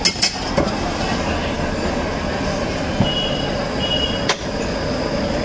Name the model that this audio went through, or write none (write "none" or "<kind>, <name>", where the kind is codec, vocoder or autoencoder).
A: none